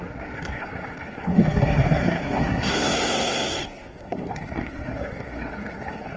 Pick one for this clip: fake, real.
fake